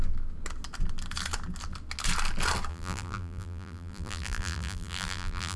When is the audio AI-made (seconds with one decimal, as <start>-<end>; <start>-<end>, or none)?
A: 2.7-5.6